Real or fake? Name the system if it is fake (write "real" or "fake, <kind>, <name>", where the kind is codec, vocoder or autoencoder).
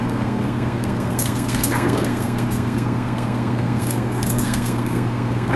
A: fake, codec, SNAC